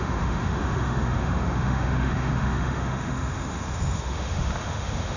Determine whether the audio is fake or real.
fake